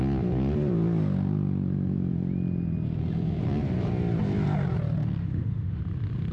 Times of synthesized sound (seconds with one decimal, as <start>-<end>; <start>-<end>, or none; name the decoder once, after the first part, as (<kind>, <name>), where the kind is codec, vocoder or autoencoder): 5.2-5.8 (autoencoder, DAC-VAE)